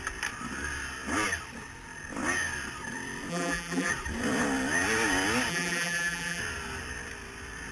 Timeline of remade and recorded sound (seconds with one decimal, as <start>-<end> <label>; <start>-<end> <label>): 0.0-3.3 recorded; 3.3-3.9 remade; 3.9-5.5 recorded; 5.5-6.4 remade; 6.4-7.7 recorded